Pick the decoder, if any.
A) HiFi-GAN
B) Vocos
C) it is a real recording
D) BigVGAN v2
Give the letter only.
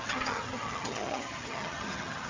A